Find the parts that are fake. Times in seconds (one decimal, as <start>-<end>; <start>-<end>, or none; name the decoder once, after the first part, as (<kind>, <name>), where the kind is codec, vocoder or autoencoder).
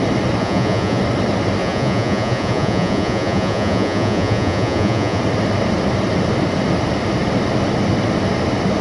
0.4-1.0 (vocoder, Vocos); 1.6-5.2